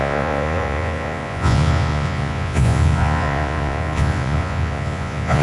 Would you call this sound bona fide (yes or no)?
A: no